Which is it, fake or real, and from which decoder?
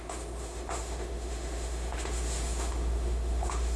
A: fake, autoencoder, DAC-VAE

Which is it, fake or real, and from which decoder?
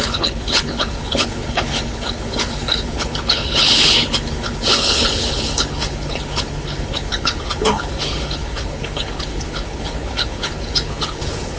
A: fake, codec, HILCodec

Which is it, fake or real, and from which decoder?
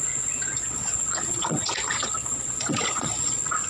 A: fake, vocoder, Vocos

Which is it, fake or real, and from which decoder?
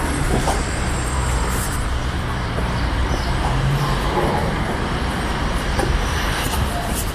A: fake, vocoder, BigVGAN v2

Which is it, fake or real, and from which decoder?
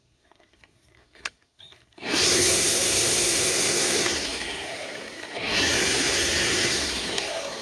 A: fake, codec, SNAC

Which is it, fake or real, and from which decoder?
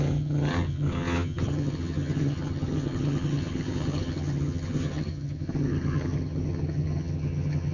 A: fake, vocoder, HiFi-GAN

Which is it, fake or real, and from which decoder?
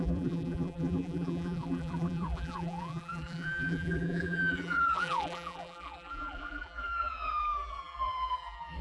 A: fake, vocoder, BigVGAN v2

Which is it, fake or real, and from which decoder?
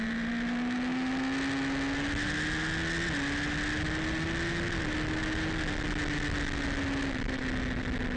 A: real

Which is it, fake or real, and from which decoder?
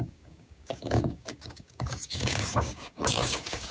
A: fake, codec, DAC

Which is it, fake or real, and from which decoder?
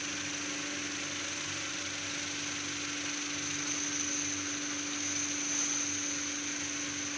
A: real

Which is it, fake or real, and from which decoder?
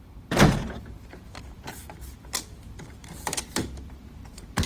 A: fake, vocoder, BigVGAN v2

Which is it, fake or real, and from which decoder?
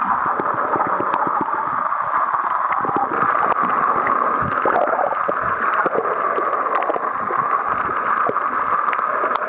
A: real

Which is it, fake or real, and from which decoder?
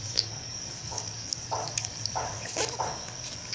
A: fake, codec, DAC